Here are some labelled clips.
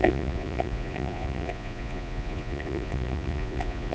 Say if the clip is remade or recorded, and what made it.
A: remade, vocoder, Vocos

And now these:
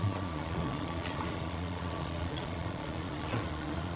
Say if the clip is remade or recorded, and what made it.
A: remade, vocoder, Vocos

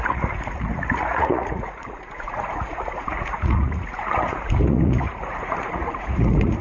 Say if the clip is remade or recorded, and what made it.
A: remade, vocoder, Vocos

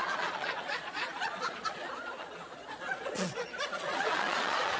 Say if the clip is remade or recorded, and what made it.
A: remade, vocoder, Vocos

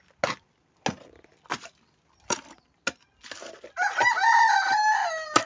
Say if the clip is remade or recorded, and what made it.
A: recorded